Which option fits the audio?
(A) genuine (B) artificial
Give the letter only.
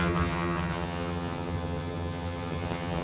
B